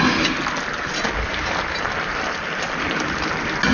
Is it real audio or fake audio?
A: real